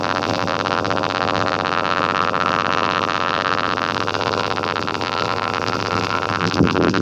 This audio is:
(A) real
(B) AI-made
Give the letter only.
B